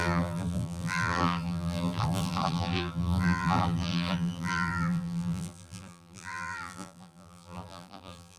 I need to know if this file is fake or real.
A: fake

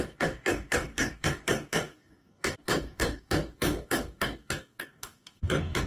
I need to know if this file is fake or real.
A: fake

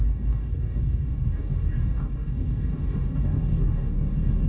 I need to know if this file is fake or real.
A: fake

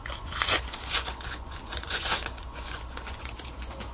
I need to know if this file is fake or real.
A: fake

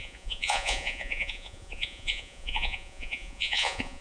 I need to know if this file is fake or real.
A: fake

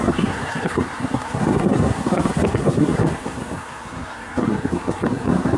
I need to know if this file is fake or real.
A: fake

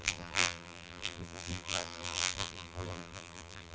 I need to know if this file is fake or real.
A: fake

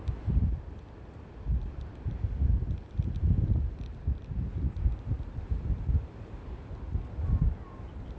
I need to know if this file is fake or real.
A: real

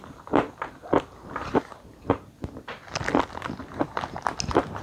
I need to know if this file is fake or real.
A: real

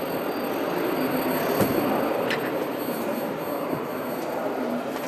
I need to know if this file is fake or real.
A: real